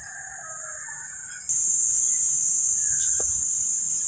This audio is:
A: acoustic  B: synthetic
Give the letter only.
A